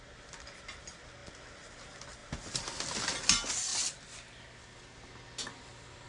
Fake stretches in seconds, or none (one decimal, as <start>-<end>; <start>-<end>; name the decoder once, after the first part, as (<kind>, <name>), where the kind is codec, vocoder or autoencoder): none